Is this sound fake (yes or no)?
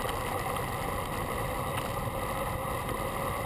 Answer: no